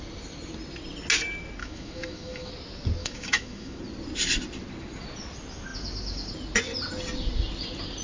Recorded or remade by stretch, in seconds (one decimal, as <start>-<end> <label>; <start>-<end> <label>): 0.0-1.6 recorded; 1.6-2.5 remade; 2.5-3.0 recorded; 3.0-3.8 remade; 3.8-8.0 recorded